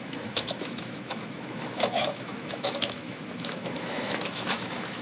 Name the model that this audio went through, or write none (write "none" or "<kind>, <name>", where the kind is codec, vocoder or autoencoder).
autoencoder, DAC-VAE